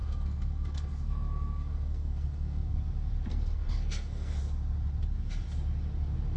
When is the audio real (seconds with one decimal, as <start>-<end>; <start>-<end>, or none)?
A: 2.8-3.3; 4.4-6.4